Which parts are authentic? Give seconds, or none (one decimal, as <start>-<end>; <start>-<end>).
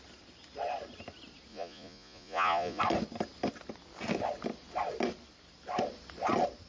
0.0-1.5; 2.8-6.7